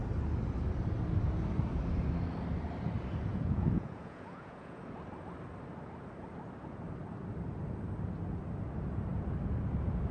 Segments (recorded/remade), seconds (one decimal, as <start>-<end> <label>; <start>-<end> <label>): 0.0-3.3 recorded; 3.3-4.8 remade; 4.8-10.1 recorded